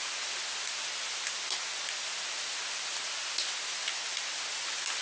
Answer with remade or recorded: recorded